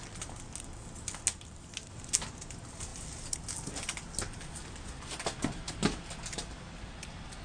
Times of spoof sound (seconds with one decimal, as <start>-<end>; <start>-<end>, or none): none